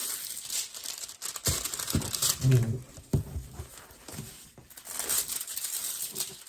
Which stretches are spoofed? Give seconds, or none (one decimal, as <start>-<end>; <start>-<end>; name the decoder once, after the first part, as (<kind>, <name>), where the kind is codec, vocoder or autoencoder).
none